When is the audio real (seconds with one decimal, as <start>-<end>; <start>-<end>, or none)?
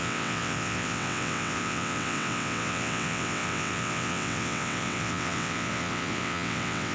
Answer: none